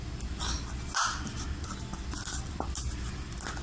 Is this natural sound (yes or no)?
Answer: yes